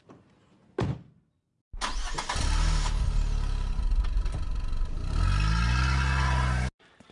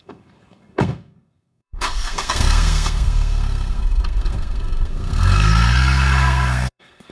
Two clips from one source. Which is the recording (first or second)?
first